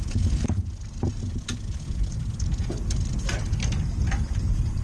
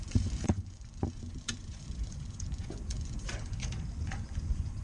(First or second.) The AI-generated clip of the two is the second